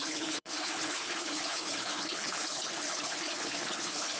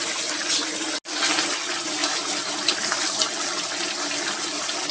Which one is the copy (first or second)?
first